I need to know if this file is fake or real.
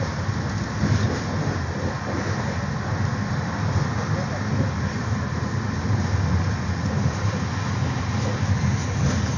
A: real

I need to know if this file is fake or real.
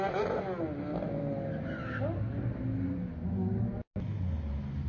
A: real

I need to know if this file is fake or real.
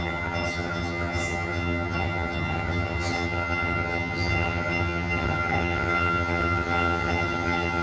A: fake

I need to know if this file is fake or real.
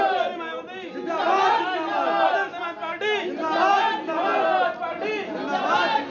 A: real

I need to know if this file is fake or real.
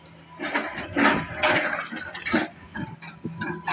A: real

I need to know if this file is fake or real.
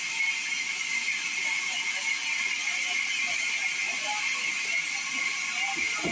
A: real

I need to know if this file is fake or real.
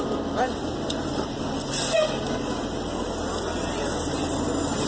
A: real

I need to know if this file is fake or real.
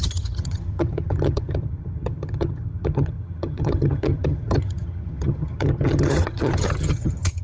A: fake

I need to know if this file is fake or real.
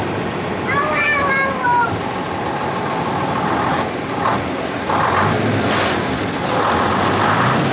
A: real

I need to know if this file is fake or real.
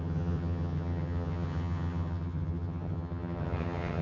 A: fake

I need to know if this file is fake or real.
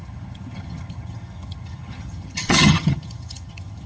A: fake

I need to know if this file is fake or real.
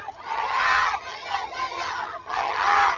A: fake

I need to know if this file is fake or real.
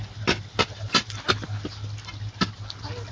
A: real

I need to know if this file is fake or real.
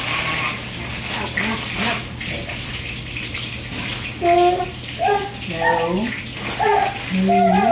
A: real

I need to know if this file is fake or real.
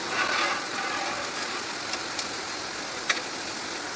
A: real